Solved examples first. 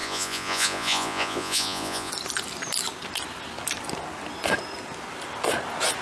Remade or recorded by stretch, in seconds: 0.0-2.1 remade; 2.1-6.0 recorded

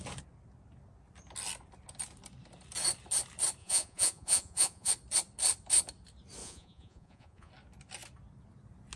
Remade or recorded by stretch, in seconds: 0.0-3.6 recorded; 3.6-4.9 remade; 4.9-6.4 recorded; 6.4-7.5 remade; 7.5-9.0 recorded

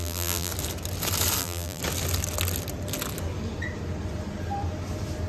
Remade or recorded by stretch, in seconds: 0.0-0.5 remade; 0.5-1.4 recorded; 1.4-1.8 remade; 1.8-5.3 recorded

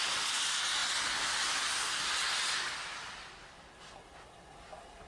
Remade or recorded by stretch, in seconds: 0.0-5.1 recorded

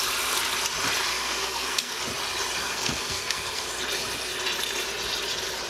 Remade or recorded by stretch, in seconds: 0.0-1.1 recorded; 1.1-2.0 remade; 2.0-2.6 recorded; 2.6-3.7 remade; 3.7-5.7 recorded

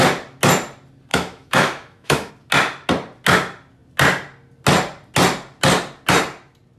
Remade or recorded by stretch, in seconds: 0.0-1.1 recorded; 1.1-2.3 remade; 2.3-6.8 recorded